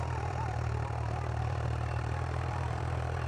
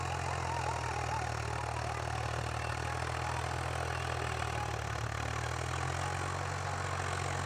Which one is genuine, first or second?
second